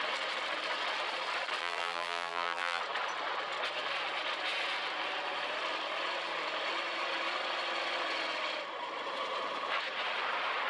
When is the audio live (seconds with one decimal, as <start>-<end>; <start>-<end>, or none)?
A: 0.0-1.6; 2.8-10.7